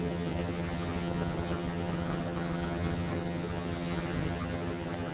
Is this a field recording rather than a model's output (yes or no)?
no